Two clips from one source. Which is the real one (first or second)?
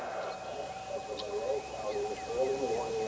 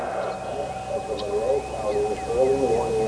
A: second